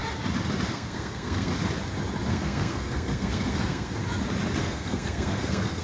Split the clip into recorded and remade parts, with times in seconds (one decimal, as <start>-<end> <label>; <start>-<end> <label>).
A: 0.0-0.7 recorded; 0.7-1.5 remade; 1.5-2.3 recorded; 2.3-4.0 remade; 4.0-4.6 recorded; 4.6-5.8 remade